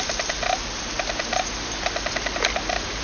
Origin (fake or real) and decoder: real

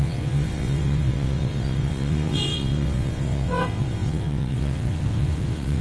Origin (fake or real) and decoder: fake, vocoder, WaveNeXt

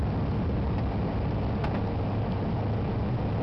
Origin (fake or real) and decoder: real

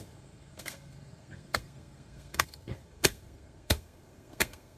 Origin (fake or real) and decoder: fake, codec, SNAC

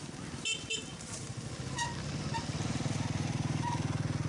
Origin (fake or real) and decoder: real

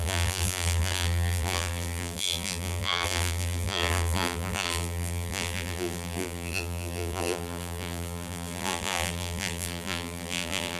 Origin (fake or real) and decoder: fake, vocoder, BigVGAN v2